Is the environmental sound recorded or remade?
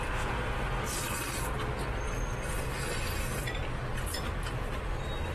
recorded